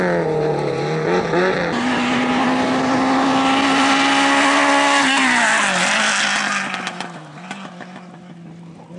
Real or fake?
real